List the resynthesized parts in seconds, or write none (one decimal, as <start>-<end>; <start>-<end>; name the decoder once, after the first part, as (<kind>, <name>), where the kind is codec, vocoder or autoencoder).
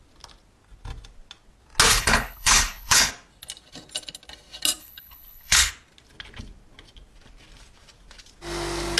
1.9-3.1 (codec, HILCodec); 4.8-5.7